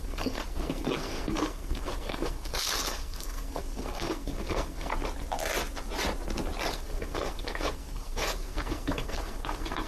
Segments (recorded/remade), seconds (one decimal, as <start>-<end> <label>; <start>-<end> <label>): 0.0-4.9 remade; 4.9-6.7 recorded; 6.7-9.9 remade